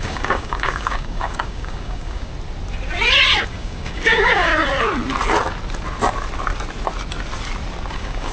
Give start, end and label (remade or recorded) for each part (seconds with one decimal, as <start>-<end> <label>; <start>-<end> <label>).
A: 0.0-2.3 remade; 2.3-3.5 recorded; 3.5-4.5 remade; 4.5-7.9 recorded; 7.9-8.3 remade